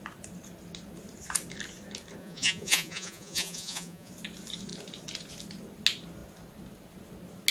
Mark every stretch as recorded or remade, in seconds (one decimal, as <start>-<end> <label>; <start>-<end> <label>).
0.0-2.2 recorded; 2.2-4.1 remade; 4.1-7.5 recorded